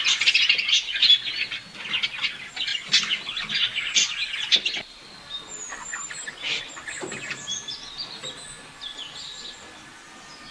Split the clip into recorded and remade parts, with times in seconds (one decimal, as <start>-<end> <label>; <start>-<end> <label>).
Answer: 0.0-0.5 remade; 0.5-7.5 recorded; 7.5-8.1 remade; 8.1-10.5 recorded